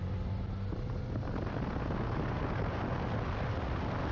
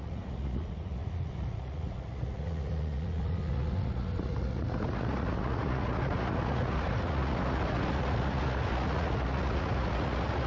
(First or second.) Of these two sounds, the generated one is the second